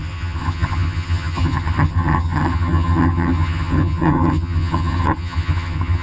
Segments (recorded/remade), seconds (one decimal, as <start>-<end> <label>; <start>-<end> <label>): 0.0-6.0 remade